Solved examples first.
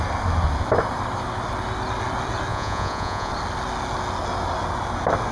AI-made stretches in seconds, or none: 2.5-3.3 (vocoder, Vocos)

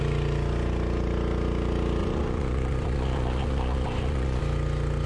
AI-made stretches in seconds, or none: 2.0-4.4 (vocoder, Vocos)

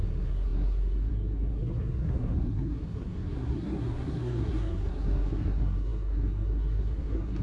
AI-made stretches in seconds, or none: 0.0-7.4 (codec, SNAC)

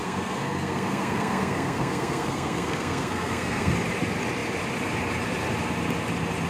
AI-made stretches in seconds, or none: 0.0-3.7 (codec, SNAC)

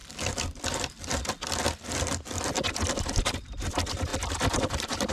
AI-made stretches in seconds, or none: 3.0-5.1 (vocoder, BigVGAN v2)

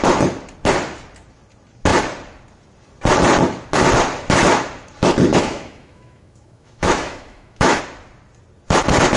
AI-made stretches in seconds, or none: 5.3-7.8 (autoencoder, DAC-VAE)

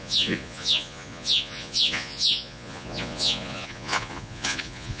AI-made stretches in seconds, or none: 0.0-5.0 (vocoder, Vocos)

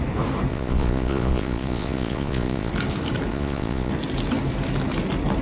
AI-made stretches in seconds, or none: 0.5-2.7 (vocoder, Vocos); 3.3-3.9